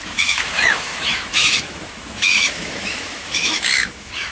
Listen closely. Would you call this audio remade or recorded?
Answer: remade